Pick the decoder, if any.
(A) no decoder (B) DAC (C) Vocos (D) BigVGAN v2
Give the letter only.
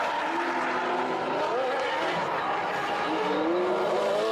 A